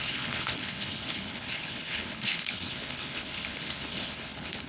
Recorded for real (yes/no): no